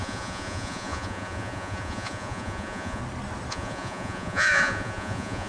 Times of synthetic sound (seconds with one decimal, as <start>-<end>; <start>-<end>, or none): 0.0-3.0; 3.5-5.5